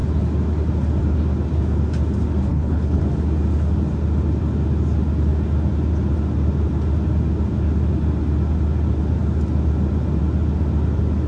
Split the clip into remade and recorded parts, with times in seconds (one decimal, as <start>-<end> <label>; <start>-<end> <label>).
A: 0.0-2.5 recorded; 2.5-3.0 remade; 3.0-11.3 recorded